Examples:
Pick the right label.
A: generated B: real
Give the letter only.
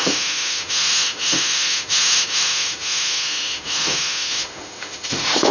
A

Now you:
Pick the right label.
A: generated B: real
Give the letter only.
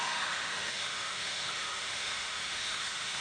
A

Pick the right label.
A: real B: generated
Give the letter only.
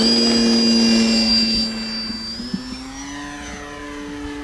A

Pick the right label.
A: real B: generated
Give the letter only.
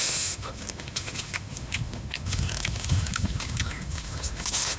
B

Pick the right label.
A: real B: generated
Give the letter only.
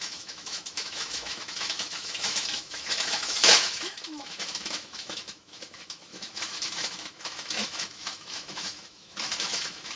B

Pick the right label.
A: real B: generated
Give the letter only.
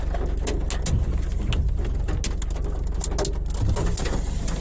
A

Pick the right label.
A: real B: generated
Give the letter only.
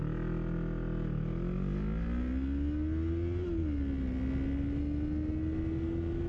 A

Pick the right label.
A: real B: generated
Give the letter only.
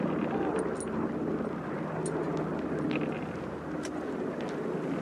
A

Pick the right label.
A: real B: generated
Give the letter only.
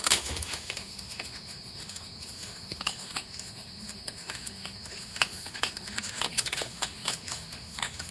B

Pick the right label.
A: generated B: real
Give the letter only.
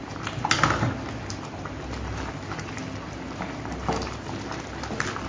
B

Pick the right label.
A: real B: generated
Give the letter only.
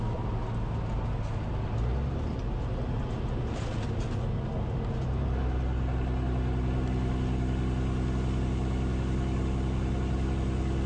A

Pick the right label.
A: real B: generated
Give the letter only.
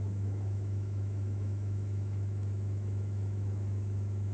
B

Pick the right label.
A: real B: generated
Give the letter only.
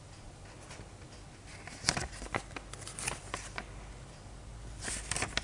A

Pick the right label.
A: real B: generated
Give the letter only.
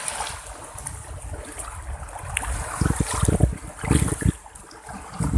A